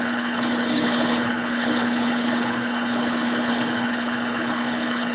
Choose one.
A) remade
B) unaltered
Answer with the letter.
A